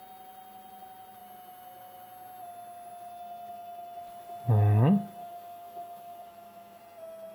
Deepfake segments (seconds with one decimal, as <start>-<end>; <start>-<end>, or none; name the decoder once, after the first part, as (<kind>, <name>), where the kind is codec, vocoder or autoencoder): 5.2-6.8 (autoencoder, DAC-VAE)